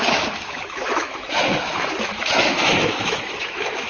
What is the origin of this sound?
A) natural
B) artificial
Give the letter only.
B